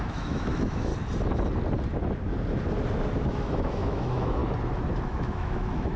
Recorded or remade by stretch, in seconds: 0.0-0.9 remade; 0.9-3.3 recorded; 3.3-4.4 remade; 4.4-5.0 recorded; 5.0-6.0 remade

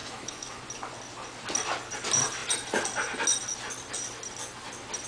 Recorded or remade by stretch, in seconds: 0.0-0.6 remade; 0.6-5.1 recorded